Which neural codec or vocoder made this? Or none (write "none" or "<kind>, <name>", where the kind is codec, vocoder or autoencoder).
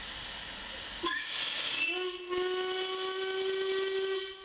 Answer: none